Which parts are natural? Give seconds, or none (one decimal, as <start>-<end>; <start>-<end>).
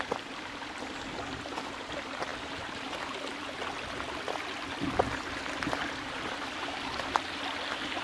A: 0.0-8.0